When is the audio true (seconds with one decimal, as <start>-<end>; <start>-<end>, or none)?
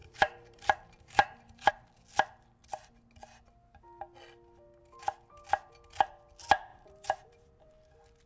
1.7-6.7; 7.7-8.3